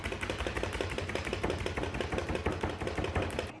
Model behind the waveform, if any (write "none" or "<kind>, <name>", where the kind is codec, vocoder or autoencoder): none